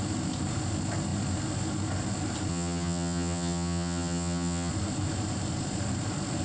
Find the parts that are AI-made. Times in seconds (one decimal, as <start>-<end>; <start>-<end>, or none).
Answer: 2.5-4.7